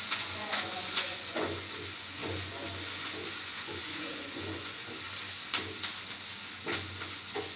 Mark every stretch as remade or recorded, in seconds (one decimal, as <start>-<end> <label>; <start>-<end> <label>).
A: 0.0-4.8 remade; 4.8-6.6 recorded; 6.6-7.6 remade